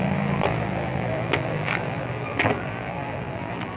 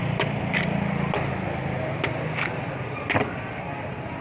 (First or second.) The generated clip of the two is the first